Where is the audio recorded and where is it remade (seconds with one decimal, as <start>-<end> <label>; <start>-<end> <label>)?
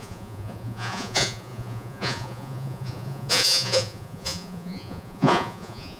0.0-6.0 remade